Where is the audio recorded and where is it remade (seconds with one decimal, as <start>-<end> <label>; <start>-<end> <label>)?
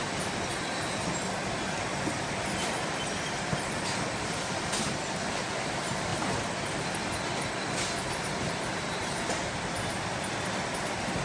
0.0-6.1 remade; 6.1-8.1 recorded; 8.1-11.2 remade